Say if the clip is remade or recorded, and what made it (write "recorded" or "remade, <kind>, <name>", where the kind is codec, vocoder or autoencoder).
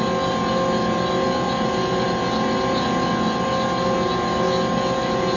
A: recorded